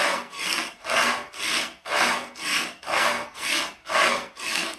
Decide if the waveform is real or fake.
fake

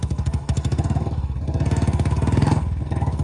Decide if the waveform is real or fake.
fake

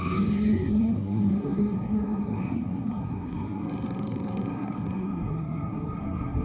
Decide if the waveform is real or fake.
fake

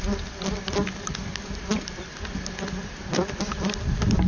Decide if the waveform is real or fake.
real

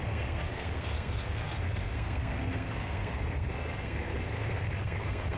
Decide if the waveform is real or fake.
fake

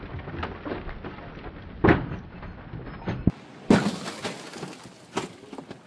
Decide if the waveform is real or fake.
real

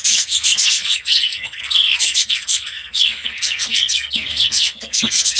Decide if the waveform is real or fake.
fake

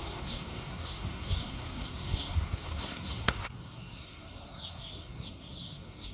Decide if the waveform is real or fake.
fake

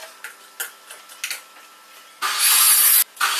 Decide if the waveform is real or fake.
real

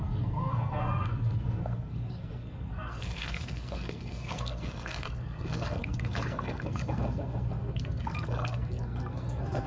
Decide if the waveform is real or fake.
fake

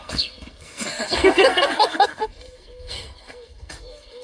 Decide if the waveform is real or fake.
fake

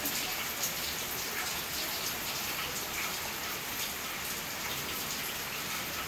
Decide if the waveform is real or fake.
real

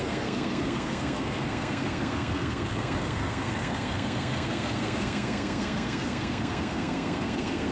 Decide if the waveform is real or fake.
fake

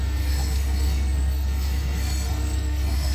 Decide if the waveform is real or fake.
fake